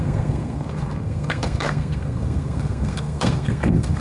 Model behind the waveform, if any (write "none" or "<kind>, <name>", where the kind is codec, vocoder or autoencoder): codec, SNAC